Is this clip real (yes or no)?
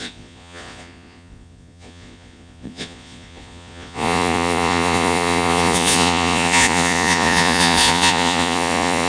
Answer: no